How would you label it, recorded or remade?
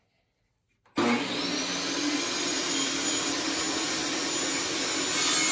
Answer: recorded